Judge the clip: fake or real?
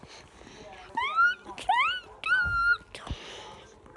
real